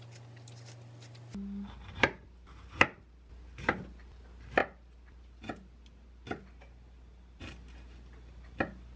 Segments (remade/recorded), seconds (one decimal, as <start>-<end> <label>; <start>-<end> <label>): 0.0-9.0 recorded